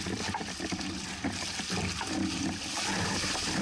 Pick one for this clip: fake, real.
real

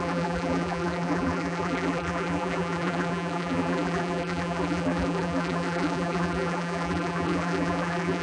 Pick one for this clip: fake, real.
fake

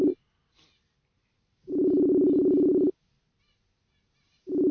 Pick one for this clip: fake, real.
real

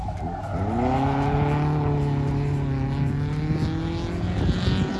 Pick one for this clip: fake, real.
real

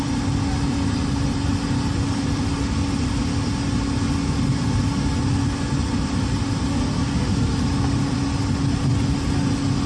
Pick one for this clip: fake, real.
real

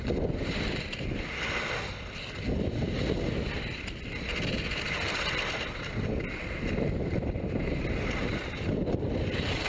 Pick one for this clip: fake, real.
real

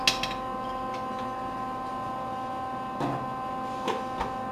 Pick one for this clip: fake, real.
real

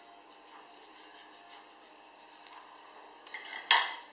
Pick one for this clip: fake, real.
real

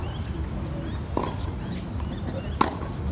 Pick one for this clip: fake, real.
real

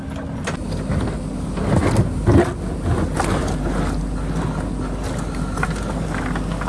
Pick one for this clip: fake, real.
real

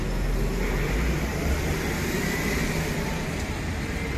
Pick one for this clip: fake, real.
real